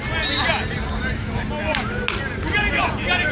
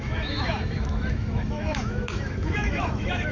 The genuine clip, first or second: first